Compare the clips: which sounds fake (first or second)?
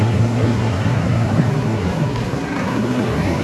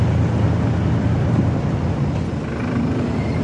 first